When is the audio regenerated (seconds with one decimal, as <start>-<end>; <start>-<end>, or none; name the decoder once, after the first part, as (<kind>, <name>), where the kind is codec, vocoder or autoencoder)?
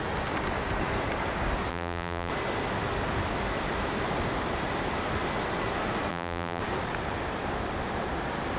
1.7-2.3 (vocoder, BigVGAN v2); 6.1-6.6